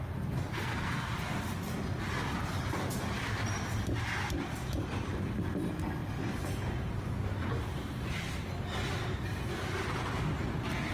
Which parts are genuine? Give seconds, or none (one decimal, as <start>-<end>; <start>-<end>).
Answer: 0.0-0.5; 1.1-10.9